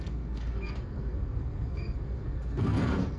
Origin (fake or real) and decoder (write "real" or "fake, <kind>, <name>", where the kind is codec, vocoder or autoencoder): fake, codec, SNAC